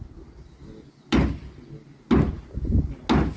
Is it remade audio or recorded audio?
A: recorded